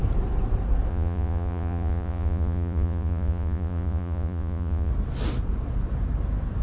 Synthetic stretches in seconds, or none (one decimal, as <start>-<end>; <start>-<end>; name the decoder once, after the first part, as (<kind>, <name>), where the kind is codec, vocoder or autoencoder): 0.9-4.9 (vocoder, Vocos)

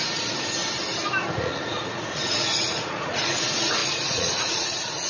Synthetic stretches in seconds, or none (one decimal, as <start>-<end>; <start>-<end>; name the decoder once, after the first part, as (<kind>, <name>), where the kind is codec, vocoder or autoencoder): 0.0-0.6 (vocoder, Vocos); 1.3-5.1

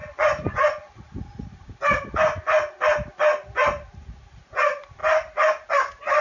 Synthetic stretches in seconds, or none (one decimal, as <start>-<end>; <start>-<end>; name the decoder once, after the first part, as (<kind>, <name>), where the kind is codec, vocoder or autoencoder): 0.0-0.9 (vocoder, Vocos)

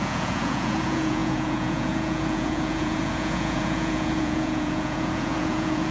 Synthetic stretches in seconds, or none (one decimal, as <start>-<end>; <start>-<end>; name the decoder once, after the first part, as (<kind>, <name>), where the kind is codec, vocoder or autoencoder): 0.0-5.9 (vocoder, Vocos)

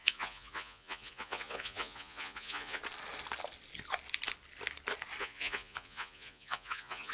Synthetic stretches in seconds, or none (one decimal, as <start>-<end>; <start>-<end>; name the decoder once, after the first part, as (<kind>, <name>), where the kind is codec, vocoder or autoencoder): 0.0-2.8 (vocoder, Vocos); 5.2-7.1

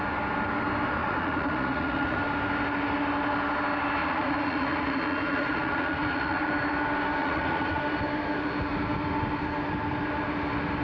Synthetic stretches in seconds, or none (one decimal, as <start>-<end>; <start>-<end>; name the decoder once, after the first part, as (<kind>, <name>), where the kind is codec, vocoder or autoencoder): 1.0-2.2 (vocoder, Vocos); 4.0-6.5; 7.2-7.8